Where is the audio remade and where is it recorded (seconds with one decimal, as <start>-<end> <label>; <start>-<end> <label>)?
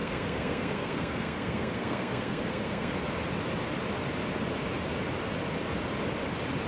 0.0-3.0 remade; 3.0-6.7 recorded